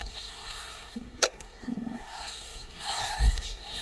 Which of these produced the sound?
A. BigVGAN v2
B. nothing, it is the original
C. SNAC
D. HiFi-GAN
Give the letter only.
C